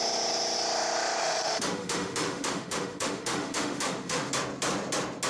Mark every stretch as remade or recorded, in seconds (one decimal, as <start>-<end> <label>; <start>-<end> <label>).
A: 0.0-1.2 recorded; 1.2-4.3 remade; 4.3-5.3 recorded